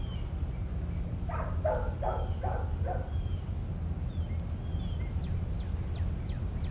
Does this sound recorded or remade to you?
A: recorded